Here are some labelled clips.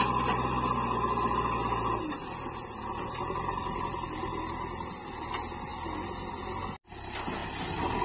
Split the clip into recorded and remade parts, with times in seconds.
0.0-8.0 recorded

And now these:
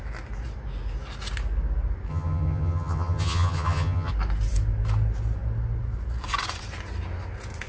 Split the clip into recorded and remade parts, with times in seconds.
0.0-2.1 recorded; 2.1-4.1 remade; 4.1-7.7 recorded